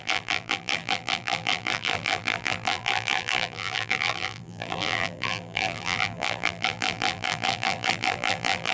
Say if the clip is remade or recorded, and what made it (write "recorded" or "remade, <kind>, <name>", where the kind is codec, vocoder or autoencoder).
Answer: remade, vocoder, BigVGAN v2